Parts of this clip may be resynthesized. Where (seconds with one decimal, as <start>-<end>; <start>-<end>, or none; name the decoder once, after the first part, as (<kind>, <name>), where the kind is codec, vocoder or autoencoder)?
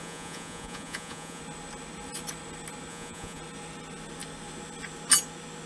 0.0-1.4 (vocoder, Vocos); 2.9-3.4